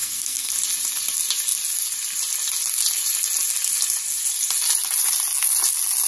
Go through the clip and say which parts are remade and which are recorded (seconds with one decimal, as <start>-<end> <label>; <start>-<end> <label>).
0.0-0.5 remade; 0.5-6.1 recorded